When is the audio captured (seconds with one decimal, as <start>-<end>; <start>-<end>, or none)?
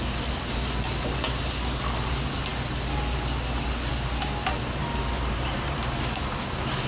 0.0-4.8; 5.8-6.9